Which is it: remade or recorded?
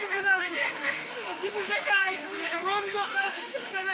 remade